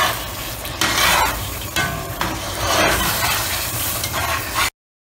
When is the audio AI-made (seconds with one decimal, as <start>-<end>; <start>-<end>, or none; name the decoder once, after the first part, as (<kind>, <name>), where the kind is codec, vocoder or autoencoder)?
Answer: 1.1-4.2 (vocoder, BigVGAN v2)